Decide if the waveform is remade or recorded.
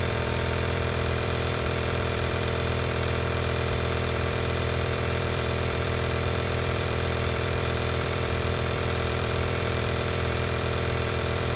remade